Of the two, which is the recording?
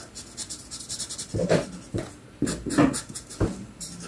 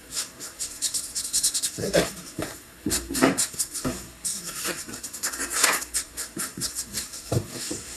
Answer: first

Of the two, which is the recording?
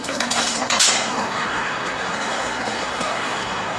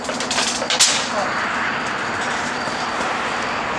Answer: second